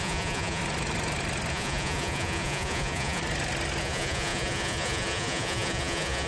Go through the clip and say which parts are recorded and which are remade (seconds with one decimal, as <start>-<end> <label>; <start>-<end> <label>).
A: 0.0-0.6 remade; 0.6-1.5 recorded; 1.5-3.2 remade; 3.2-3.8 recorded; 3.8-6.3 remade